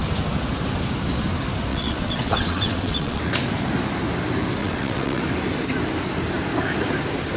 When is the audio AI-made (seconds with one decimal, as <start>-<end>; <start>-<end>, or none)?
1.7-3.3; 4.6-5.2